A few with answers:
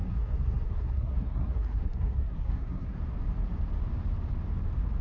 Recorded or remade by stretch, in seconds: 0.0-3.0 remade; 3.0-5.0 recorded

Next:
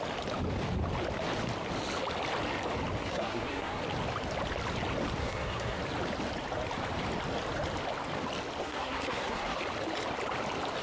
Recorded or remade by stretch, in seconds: 0.0-3.0 recorded; 3.0-3.8 remade; 3.8-5.2 recorded; 5.2-5.8 remade; 5.8-8.6 recorded; 8.6-9.6 remade; 9.6-10.8 recorded